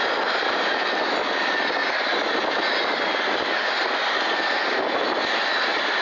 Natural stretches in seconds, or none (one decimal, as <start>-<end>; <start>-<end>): 0.0-6.0